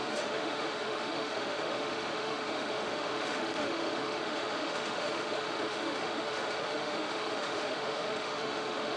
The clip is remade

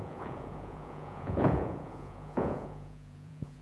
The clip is remade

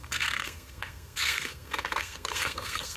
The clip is remade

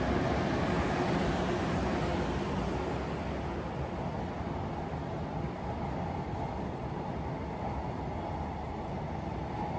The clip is recorded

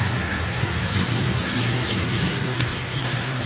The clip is remade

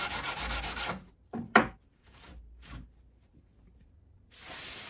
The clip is remade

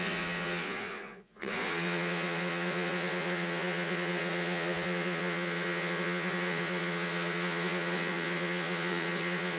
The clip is remade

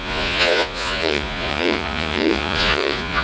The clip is remade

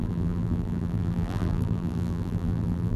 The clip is remade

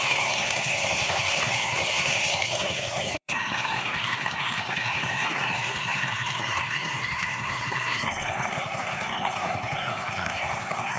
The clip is remade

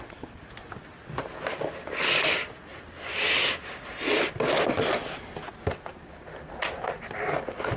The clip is recorded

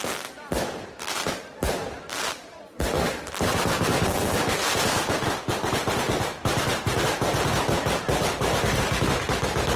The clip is remade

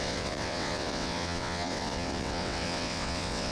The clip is remade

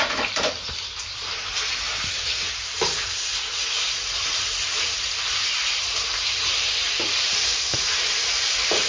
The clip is remade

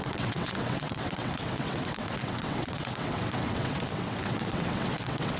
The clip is remade